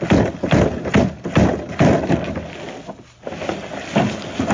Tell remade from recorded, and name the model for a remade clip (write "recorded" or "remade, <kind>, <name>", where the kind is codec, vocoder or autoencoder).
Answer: recorded